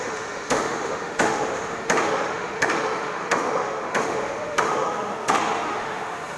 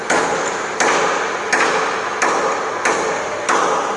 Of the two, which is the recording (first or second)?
second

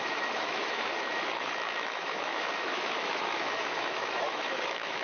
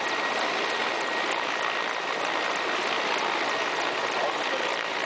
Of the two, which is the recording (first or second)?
second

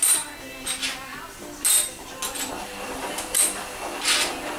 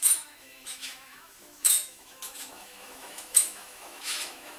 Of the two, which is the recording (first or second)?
first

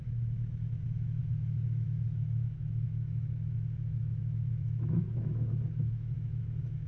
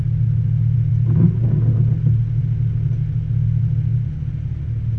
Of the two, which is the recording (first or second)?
second